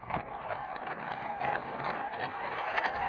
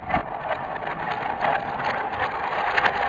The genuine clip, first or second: second